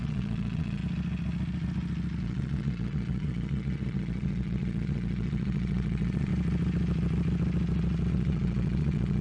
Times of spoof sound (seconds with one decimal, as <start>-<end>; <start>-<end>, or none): 0.0-0.8; 2.2-6.3; 8.1-9.2